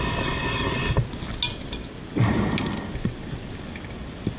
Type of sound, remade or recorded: recorded